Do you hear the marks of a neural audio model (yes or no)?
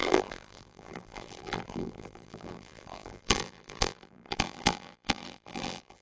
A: yes